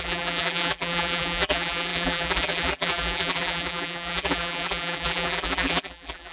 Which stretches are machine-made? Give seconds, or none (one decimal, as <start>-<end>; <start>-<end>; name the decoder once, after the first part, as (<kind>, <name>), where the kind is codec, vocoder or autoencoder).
0.0-6.3 (vocoder, BigVGAN v2)